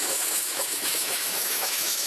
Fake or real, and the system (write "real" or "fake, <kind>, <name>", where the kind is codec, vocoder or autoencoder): fake, autoencoder, DAC-VAE